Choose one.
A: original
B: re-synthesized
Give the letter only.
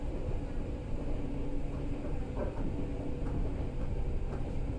B